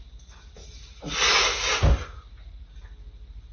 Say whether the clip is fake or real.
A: real